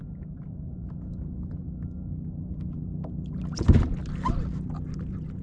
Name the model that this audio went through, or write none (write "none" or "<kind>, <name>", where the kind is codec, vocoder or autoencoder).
none